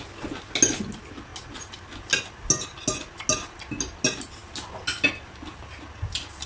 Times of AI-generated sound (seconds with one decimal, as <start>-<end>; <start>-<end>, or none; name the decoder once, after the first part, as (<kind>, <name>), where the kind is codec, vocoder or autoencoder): none